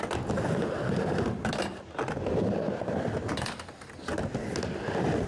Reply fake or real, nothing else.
real